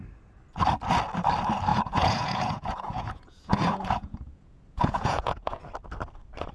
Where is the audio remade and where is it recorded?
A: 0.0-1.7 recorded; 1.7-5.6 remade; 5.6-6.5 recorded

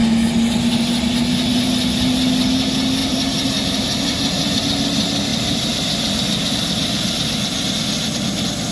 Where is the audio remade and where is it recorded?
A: 0.0-3.0 recorded; 3.0-4.6 remade; 4.6-8.7 recorded

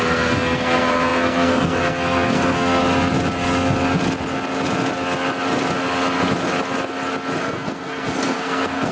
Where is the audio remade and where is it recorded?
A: 0.0-2.8 remade; 2.8-7.4 recorded; 7.4-8.9 remade